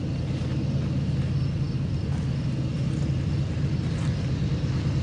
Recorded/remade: recorded